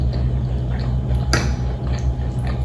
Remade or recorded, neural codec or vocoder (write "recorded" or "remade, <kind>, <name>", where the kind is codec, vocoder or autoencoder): recorded